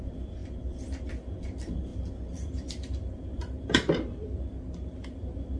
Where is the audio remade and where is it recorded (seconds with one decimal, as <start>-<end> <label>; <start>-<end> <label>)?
0.0-5.6 remade